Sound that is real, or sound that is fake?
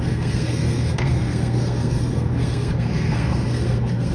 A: fake